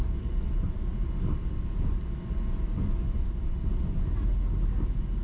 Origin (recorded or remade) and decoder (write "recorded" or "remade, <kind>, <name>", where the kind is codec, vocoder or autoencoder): recorded